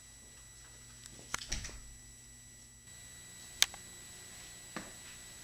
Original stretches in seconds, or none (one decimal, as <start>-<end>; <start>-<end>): 0.0-5.4